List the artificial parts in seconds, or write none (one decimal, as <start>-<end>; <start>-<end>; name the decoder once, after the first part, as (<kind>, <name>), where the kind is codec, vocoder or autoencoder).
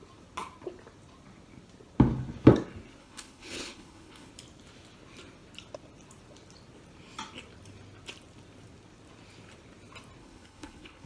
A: 3.0-4.3 (codec, HILCodec); 10.2-11.1